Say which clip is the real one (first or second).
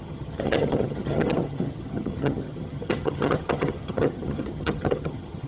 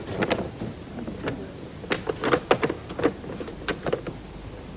second